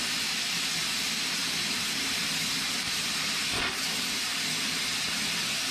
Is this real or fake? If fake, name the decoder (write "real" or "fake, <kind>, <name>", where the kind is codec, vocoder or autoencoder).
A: real